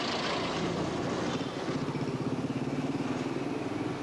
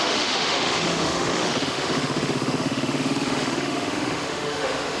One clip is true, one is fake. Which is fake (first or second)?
second